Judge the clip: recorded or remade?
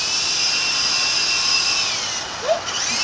recorded